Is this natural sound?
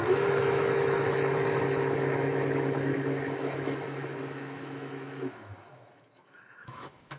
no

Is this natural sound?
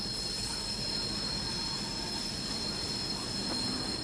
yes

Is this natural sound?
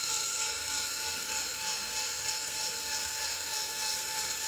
no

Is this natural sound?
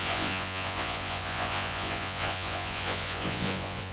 no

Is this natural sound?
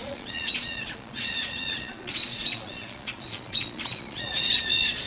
no